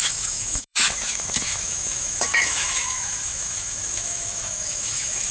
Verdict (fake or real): fake